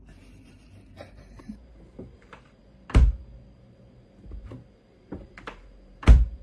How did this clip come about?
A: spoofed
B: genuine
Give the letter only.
A